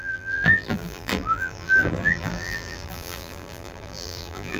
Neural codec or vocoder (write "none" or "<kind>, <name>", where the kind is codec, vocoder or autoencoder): vocoder, BigVGAN v2